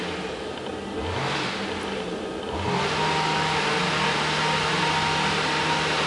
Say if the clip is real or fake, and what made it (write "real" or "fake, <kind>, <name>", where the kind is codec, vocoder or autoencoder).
real